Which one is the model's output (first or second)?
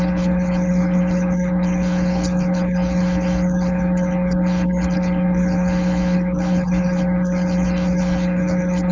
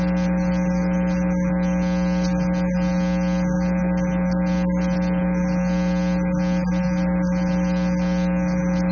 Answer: first